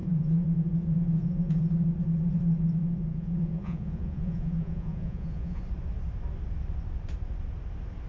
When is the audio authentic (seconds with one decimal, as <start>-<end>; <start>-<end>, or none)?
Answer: 1.7-2.8; 5.6-8.1